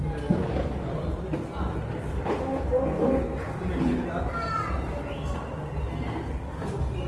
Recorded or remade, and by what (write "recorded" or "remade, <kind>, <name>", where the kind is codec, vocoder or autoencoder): recorded